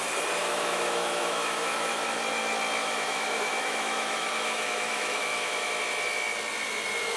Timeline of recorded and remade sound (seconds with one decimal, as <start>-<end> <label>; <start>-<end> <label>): 0.0-0.4 recorded; 0.4-2.2 remade; 2.2-2.8 recorded; 2.8-5.7 remade; 5.7-7.2 recorded